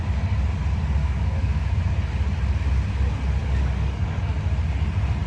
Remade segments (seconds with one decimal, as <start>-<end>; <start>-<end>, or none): 1.0-1.8; 3.4-4.2